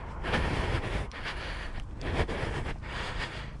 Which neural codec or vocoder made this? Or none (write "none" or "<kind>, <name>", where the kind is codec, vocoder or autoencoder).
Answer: vocoder, BigVGAN v2